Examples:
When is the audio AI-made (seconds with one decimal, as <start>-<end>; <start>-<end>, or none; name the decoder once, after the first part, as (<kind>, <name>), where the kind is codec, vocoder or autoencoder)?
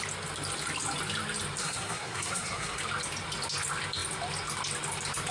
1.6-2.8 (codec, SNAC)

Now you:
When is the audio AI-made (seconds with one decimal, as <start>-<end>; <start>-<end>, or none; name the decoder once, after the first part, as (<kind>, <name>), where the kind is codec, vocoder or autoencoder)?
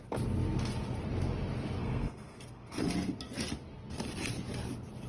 1.8-2.8 (codec, SNAC)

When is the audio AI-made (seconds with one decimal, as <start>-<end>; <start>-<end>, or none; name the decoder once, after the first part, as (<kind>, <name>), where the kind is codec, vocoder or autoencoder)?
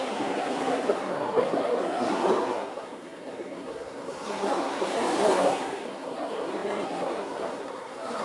0.0-8.2 (codec, SNAC)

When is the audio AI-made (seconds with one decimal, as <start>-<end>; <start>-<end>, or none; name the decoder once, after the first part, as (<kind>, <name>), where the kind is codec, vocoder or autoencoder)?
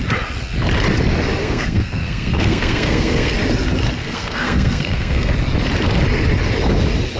1.4-3.3 (codec, SNAC); 4.0-5.3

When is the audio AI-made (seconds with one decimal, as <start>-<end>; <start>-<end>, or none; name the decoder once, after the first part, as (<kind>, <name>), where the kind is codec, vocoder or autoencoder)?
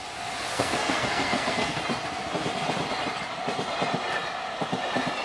0.5-1.8 (codec, SNAC)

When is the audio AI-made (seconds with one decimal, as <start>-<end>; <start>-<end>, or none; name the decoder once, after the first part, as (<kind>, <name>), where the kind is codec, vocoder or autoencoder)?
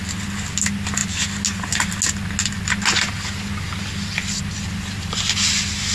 none